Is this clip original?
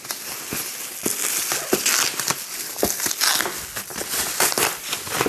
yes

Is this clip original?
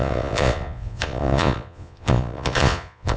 no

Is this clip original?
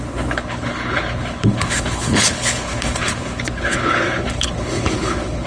no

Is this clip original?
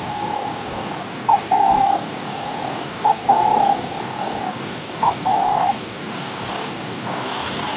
no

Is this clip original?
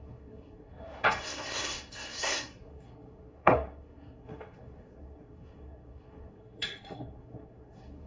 no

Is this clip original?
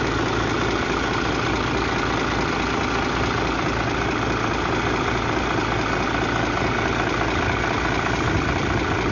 yes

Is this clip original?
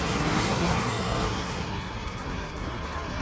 no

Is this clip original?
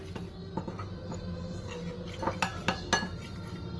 yes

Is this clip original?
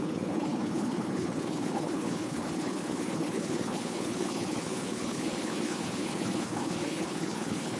no